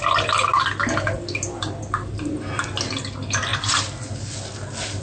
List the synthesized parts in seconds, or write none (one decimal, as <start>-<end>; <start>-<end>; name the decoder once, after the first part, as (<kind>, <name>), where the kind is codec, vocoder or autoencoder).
none